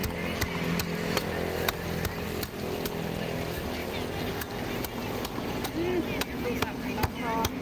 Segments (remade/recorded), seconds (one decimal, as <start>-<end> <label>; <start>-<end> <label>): 0.0-7.6 recorded